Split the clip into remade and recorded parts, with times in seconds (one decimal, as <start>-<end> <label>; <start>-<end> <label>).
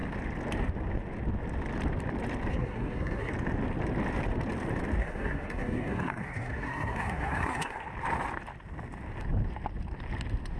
0.0-2.5 recorded; 2.5-3.3 remade; 3.3-5.0 recorded; 5.0-7.9 remade; 7.9-10.6 recorded